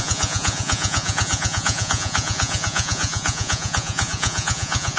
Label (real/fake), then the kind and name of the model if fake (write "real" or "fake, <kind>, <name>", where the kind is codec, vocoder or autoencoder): fake, vocoder, Vocos